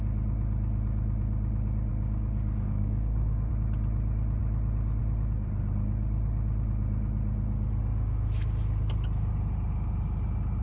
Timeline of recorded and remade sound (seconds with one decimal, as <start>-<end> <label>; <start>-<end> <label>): 0.0-1.9 recorded; 1.9-3.5 remade; 3.5-10.6 recorded

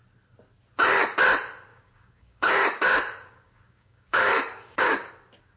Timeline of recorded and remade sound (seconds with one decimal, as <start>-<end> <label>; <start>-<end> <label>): 0.0-1.7 recorded; 1.7-5.1 remade; 5.1-5.6 recorded

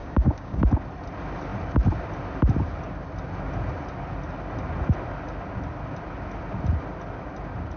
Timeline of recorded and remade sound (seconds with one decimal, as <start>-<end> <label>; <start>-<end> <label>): 0.0-0.6 remade; 0.6-7.8 recorded

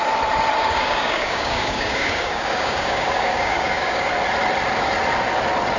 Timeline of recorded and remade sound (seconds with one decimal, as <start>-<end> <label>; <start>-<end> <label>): 0.0-0.6 recorded; 0.6-4.1 remade; 4.1-5.8 recorded

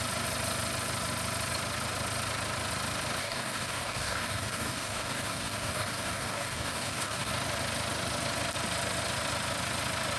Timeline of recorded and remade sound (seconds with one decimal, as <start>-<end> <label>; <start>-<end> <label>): 0.0-3.2 recorded; 3.2-7.3 remade; 7.3-10.2 recorded

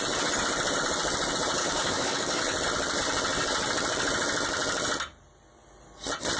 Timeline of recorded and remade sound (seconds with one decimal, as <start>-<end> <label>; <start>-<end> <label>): 0.0-1.6 recorded; 1.6-2.4 remade; 2.4-6.4 recorded

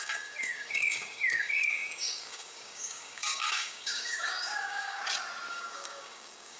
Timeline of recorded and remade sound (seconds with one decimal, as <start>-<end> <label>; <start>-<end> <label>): 0.0-5.0 remade; 5.0-5.5 recorded; 5.5-6.6 remade

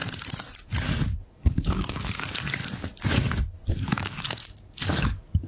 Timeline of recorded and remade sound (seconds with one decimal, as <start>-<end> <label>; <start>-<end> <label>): 0.0-1.3 recorded; 1.3-2.6 remade; 2.6-3.7 recorded; 3.7-5.5 remade